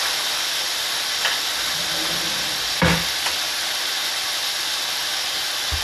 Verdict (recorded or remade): recorded